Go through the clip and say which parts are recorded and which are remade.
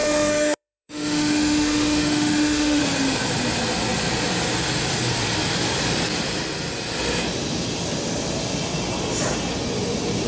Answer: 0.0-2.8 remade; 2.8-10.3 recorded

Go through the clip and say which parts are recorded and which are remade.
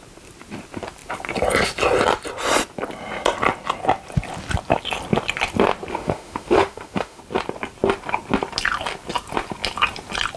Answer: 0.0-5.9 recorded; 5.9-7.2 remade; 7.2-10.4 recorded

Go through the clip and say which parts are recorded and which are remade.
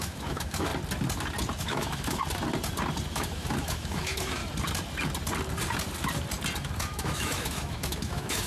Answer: 0.0-0.7 remade; 0.7-1.6 recorded; 1.6-2.2 remade; 2.2-3.1 recorded; 3.1-4.4 remade; 4.4-6.6 recorded; 6.6-8.5 remade